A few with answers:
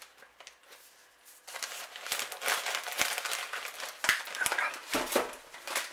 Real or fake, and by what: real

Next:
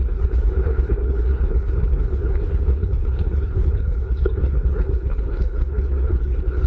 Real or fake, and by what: fake, codec, HILCodec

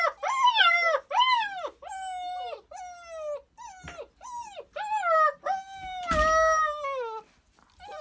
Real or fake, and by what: real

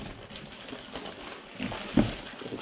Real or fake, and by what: real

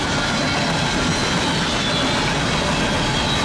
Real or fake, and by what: real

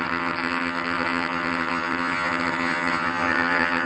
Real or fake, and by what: fake, vocoder, HiFi-GAN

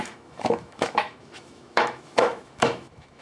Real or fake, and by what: fake, autoencoder, DAC-VAE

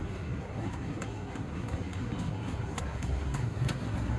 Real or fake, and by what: fake, codec, SNAC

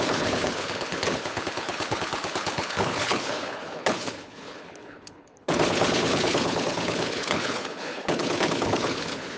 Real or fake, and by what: fake, codec, HILCodec